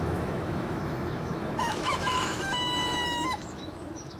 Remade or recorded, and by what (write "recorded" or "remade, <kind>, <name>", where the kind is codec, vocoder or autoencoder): remade, autoencoder, DAC-VAE